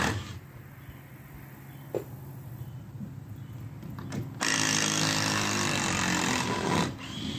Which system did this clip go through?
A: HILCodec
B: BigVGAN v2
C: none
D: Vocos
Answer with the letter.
C